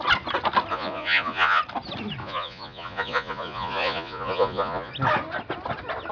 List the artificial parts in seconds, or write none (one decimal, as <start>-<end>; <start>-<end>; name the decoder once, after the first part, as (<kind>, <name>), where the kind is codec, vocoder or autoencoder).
0.7-1.6 (vocoder, Vocos); 2.2-4.9